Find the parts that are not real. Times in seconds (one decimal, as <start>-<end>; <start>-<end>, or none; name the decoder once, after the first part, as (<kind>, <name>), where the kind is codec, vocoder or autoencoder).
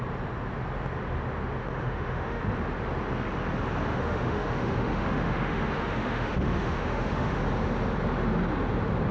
1.6-2.4 (autoencoder, DAC-VAE); 3.9-7.4